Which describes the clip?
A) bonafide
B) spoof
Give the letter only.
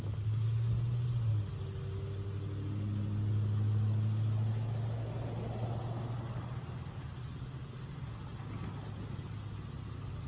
A